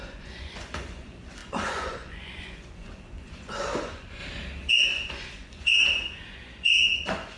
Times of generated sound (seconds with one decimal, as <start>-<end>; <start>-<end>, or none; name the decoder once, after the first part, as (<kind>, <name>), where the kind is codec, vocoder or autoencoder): 0.0-4.2 (vocoder, Vocos); 4.7-7.4

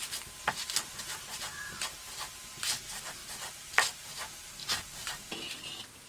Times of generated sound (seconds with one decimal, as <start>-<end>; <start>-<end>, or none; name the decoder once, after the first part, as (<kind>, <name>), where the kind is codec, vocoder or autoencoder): none

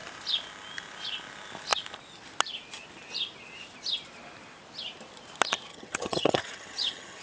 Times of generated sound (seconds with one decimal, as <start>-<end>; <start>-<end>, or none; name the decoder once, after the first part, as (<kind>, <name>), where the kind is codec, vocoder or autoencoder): 5.7-7.2 (vocoder, HiFi-GAN)

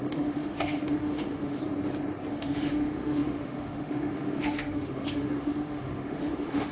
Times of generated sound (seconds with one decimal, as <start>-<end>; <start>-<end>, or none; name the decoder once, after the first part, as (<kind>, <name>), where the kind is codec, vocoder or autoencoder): 0.0-1.6 (autoencoder, DAC-VAE); 2.3-6.7

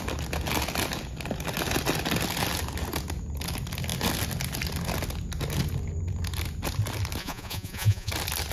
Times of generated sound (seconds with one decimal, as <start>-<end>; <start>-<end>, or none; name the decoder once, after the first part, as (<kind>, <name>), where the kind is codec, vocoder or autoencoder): 7.2-8.1 (vocoder, Vocos)

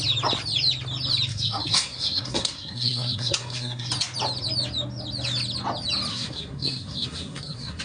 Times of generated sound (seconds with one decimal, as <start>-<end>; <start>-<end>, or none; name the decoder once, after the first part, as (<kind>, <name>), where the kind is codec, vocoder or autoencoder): 1.3-3.9 (codec, SNAC); 6.1-7.8